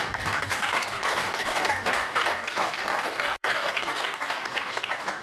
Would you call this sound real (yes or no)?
no